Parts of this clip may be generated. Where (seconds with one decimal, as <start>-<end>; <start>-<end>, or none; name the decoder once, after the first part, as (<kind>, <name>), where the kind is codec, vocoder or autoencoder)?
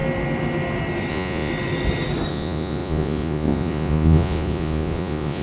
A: 1.1-1.5 (vocoder, Vocos); 2.3-5.4